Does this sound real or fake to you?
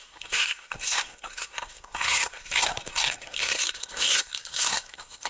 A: fake